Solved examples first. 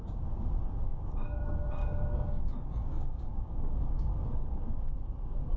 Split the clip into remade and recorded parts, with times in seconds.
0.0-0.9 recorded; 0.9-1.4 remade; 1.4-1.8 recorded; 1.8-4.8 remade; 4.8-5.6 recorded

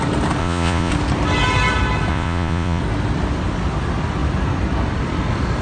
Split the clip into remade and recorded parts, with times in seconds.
0.0-0.4 recorded; 0.4-0.9 remade; 0.9-2.1 recorded; 2.1-2.8 remade; 2.8-5.6 recorded

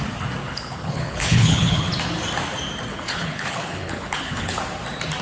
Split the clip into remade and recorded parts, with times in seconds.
0.0-0.4 recorded; 0.4-1.9 remade; 1.9-2.9 recorded; 2.9-4.6 remade; 4.6-5.2 recorded